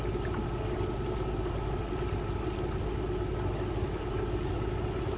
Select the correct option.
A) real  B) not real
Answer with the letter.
A